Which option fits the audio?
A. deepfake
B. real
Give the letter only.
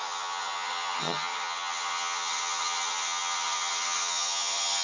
A